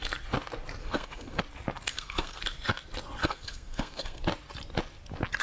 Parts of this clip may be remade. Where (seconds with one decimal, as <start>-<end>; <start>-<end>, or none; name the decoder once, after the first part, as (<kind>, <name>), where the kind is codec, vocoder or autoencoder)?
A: 0.8-1.4 (codec, SNAC); 1.9-2.4; 3.2-4.2